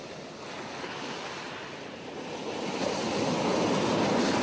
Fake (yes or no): no